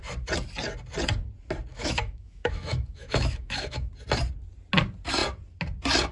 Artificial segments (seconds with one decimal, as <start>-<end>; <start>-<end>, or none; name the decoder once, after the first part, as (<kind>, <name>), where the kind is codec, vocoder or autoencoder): 1.7-3.9 (autoencoder, DAC-VAE)